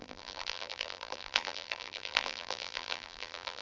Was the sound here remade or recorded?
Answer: remade